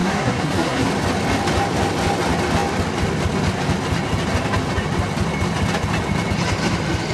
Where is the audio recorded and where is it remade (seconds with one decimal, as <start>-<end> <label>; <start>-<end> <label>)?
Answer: 0.0-0.9 remade; 0.9-7.1 recorded